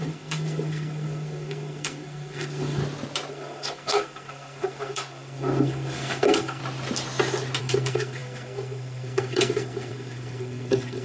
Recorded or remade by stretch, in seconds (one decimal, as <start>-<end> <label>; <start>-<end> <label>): 0.0-2.8 remade; 2.8-3.3 recorded; 3.3-6.6 remade; 6.6-7.6 recorded; 7.6-11.0 remade

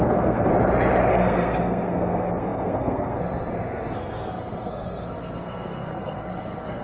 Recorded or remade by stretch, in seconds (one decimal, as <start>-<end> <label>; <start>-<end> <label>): 0.0-0.5 remade; 0.5-1.1 recorded; 1.1-6.8 remade